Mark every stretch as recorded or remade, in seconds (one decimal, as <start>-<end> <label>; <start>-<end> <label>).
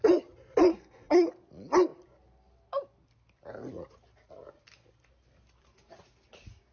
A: 0.0-0.7 recorded; 0.7-1.3 remade; 1.3-6.7 recorded